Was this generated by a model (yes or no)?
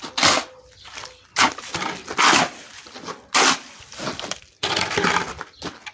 no